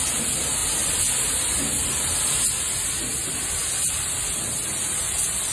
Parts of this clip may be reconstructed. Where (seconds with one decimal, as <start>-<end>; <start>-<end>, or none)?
none